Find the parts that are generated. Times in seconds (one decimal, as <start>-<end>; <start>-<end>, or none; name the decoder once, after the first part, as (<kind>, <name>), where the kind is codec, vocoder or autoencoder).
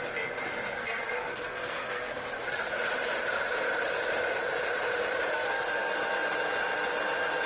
0.8-2.2 (codec, SNAC)